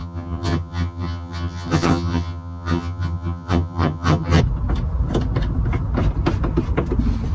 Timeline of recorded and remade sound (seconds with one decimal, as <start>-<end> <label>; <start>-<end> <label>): 0.0-4.4 remade; 4.4-7.3 recorded